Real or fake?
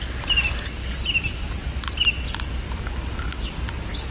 real